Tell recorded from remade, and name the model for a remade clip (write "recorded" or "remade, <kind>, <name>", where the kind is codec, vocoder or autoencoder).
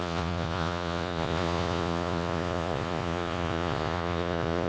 remade, vocoder, Vocos